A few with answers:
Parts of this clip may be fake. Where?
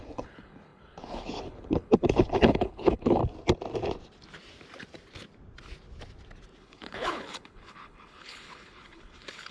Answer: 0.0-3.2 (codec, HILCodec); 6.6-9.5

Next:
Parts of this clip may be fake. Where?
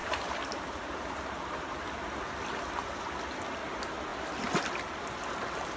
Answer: none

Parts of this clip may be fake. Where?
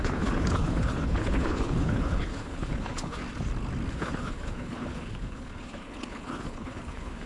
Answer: 0.0-3.2 (codec, HILCodec); 3.9-7.3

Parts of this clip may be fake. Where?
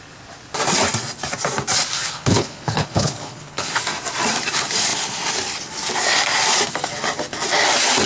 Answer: 2.0-3.8 (codec, HILCodec)